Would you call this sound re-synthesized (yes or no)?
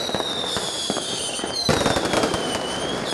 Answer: no